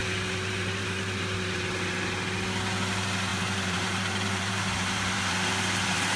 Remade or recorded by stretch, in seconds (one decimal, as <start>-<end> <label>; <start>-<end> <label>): 0.0-1.7 remade; 1.7-3.3 recorded; 3.3-6.2 remade